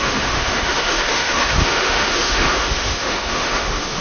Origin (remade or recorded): remade